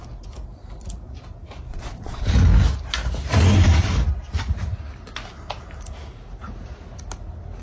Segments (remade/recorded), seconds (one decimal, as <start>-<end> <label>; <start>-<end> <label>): 0.0-1.7 recorded; 1.7-2.3 remade; 2.3-7.6 recorded